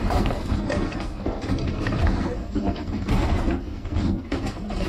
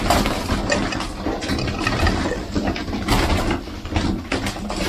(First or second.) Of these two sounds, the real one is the second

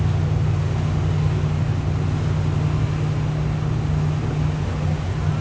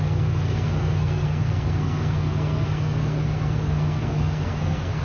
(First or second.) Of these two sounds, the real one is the first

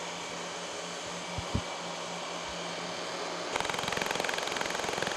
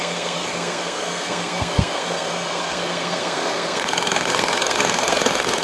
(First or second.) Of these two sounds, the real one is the first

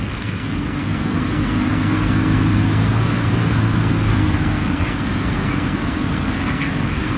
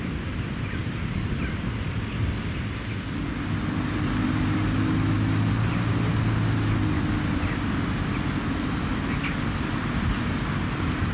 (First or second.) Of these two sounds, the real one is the second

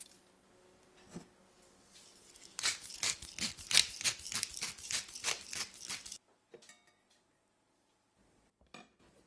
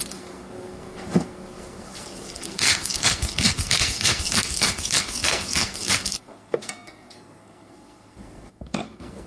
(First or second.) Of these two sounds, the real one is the first